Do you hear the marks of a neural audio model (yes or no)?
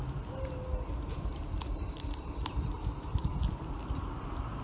no